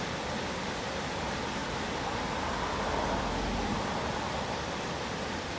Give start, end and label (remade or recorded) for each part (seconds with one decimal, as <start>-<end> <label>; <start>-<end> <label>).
0.0-5.6 recorded

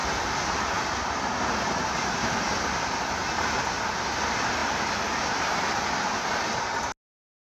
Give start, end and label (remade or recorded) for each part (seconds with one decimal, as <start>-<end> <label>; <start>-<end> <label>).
0.0-7.5 recorded

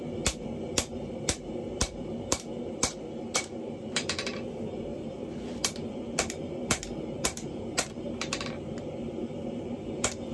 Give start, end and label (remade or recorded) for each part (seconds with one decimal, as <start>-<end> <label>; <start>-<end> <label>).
0.0-10.3 remade

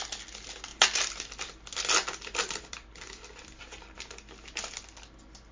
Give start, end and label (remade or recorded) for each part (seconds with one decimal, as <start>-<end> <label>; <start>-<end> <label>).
0.0-0.7 recorded; 0.7-4.0 remade; 4.0-5.5 recorded

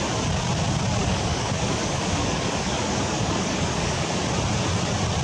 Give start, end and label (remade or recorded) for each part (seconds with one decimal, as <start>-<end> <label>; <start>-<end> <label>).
0.0-1.0 recorded; 1.0-4.1 remade; 4.1-5.2 recorded

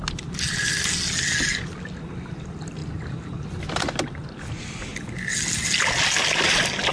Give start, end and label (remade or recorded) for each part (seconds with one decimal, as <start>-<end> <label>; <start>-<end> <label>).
0.0-2.8 recorded; 2.8-3.7 remade; 3.7-6.9 recorded

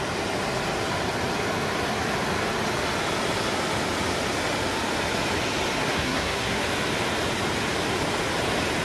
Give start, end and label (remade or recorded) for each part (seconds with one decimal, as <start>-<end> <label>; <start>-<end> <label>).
0.0-5.8 recorded; 5.8-6.6 remade; 6.6-8.8 recorded